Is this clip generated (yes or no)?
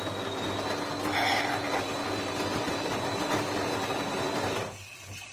no